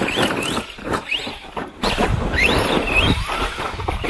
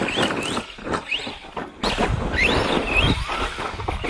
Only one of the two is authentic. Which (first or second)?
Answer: second